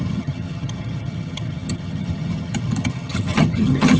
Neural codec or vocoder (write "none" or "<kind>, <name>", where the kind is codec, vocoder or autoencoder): vocoder, HiFi-GAN